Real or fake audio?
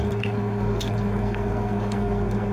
fake